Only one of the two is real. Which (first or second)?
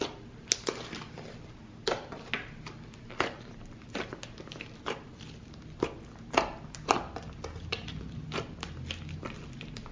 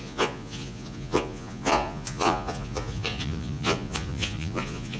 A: first